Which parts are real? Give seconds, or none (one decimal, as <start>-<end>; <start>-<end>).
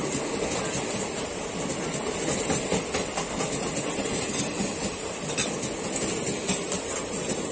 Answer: 0.0-7.5